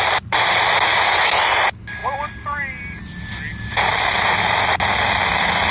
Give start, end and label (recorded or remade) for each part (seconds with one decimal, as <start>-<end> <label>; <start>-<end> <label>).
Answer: 0.0-5.7 recorded